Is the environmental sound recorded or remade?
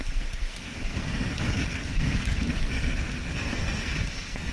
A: remade